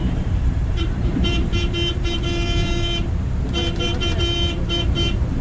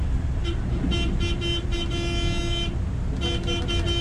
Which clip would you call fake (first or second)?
first